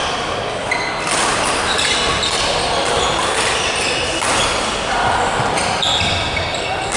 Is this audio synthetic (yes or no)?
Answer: no